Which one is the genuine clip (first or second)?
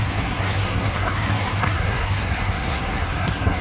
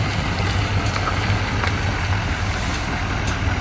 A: second